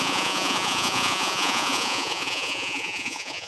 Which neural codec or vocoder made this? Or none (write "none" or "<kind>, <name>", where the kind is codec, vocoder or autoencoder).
vocoder, Vocos